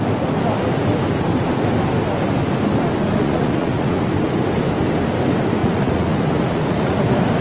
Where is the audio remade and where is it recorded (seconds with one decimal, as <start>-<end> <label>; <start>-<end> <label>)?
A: 0.0-3.0 recorded; 3.0-4.0 remade; 4.0-5.6 recorded; 5.6-7.0 remade; 7.0-7.4 recorded

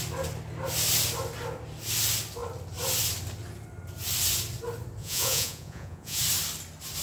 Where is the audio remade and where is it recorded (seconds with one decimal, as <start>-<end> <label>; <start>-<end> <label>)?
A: 0.0-5.0 recorded; 5.0-6.2 remade; 6.2-7.0 recorded

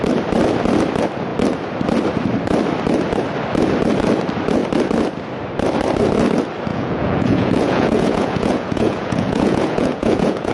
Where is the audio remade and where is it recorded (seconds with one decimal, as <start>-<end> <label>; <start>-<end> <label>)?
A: 0.0-6.7 recorded; 6.7-10.5 remade

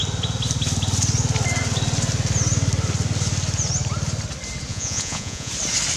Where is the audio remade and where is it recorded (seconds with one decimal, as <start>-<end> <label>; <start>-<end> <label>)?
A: 0.0-4.7 recorded; 4.7-5.5 remade; 5.5-6.0 recorded

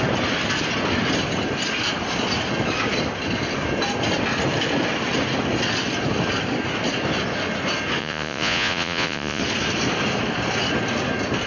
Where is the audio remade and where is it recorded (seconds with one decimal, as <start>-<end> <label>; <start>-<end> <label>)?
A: 0.0-8.0 recorded; 8.0-9.4 remade; 9.4-11.5 recorded

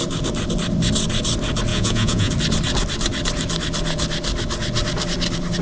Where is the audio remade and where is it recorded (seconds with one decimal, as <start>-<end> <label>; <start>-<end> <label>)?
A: 0.0-1.7 recorded; 1.7-2.3 remade; 2.3-5.6 recorded